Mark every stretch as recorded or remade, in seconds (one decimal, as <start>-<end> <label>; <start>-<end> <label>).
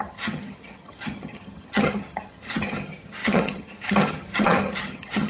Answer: 0.0-5.3 remade